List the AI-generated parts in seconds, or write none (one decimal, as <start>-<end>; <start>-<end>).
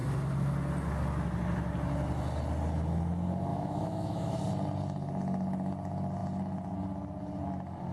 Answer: 3.5-4.4